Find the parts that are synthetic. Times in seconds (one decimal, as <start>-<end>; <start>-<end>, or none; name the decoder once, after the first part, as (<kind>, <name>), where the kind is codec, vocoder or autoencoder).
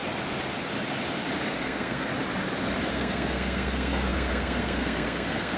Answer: 1.5-2.1 (codec, SNAC); 2.9-5.6